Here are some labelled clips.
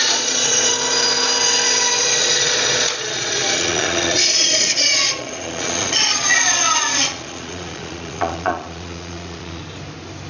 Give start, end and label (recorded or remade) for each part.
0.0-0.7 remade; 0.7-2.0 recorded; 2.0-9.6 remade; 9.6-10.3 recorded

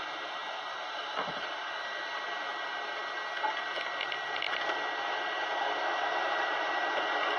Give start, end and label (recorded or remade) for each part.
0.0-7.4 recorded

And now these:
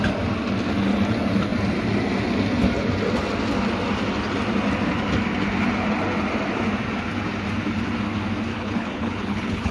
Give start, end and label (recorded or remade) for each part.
0.0-8.5 recorded; 8.5-9.7 remade

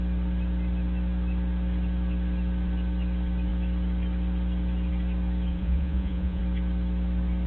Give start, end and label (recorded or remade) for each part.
0.0-5.5 recorded; 5.5-6.4 remade; 6.4-7.5 recorded

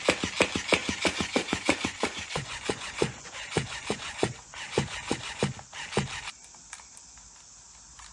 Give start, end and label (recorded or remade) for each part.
0.0-0.8 recorded; 0.8-5.4 remade; 5.4-8.1 recorded